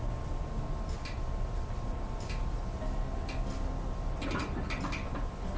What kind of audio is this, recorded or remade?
recorded